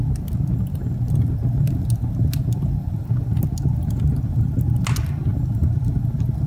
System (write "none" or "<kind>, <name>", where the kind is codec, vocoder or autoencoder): none